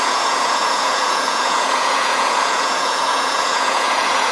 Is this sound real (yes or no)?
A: no